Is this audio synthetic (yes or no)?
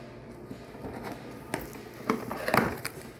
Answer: no